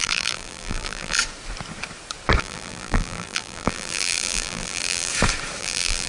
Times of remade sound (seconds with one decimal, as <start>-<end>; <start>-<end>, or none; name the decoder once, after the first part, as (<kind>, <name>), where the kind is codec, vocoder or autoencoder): 0.0-1.2 (vocoder, BigVGAN v2); 2.4-5.1; 5.6-6.1